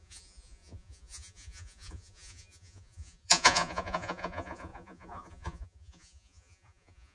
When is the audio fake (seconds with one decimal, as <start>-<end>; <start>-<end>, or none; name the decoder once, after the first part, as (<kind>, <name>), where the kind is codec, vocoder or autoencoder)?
0.0-7.1 (vocoder, Vocos)